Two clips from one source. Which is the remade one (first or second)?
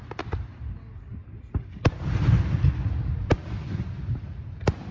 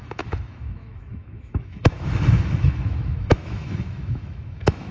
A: second